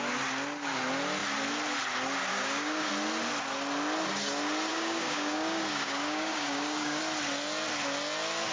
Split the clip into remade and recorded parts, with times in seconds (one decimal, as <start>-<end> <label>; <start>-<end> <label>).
0.0-2.3 recorded; 2.3-2.9 remade; 2.9-4.7 recorded; 4.7-7.0 remade; 7.0-8.5 recorded

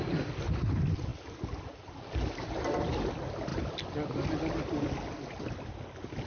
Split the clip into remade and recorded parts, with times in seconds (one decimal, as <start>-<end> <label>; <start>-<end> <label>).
0.0-6.3 recorded

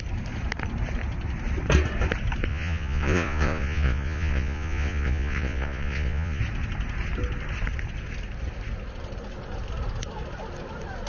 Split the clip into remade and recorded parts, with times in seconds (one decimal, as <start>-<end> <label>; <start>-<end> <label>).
0.0-2.5 recorded; 2.5-6.4 remade; 6.4-11.1 recorded